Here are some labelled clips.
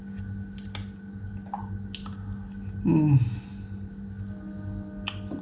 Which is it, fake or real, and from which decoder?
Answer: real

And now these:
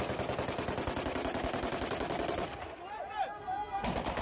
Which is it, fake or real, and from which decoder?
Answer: real